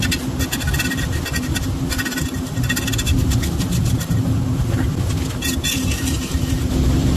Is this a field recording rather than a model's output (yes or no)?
yes